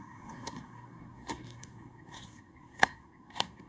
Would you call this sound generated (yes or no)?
yes